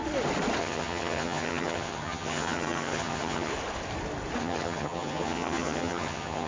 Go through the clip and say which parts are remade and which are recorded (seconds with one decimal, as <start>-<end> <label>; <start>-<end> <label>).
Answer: 0.0-0.6 recorded; 0.6-3.5 remade; 3.5-4.4 recorded; 4.4-6.5 remade